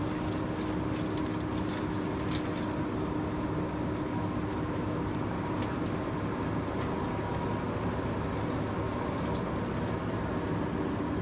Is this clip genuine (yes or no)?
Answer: yes